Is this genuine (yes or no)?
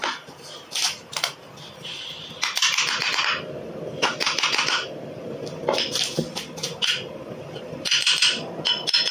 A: yes